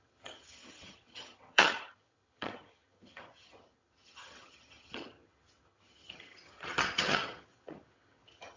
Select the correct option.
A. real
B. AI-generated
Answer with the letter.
B